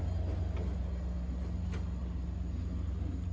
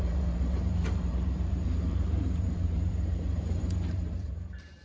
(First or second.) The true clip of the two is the first